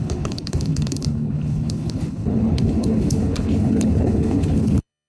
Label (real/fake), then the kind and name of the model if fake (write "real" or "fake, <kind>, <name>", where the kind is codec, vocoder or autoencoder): fake, codec, HILCodec